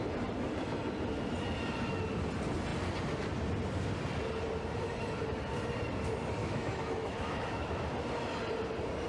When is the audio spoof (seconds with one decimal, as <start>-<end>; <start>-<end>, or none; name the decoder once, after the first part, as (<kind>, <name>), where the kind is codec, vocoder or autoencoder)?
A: 6.4-7.7 (autoencoder, DAC-VAE)